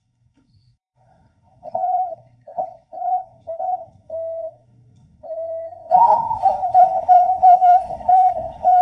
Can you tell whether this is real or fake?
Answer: fake